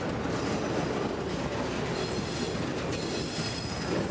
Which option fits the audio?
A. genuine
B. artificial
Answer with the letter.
A